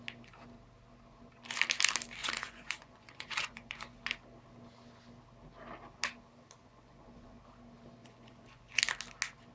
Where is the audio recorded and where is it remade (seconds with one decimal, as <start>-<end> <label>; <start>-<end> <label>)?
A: 0.0-2.2 recorded; 2.2-4.0 remade; 4.0-6.6 recorded; 6.6-7.4 remade; 7.4-8.0 recorded; 8.0-8.8 remade; 8.8-9.5 recorded